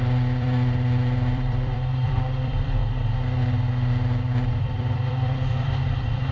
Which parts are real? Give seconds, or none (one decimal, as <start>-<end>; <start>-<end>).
2.8-4.5